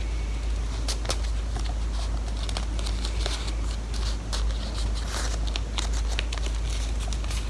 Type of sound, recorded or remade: recorded